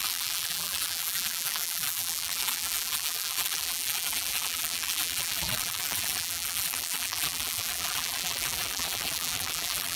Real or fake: fake